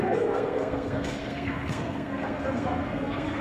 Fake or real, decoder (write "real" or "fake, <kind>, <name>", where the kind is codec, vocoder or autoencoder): fake, codec, SNAC